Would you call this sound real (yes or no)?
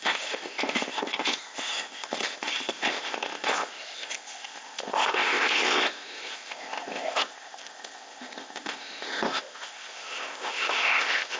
no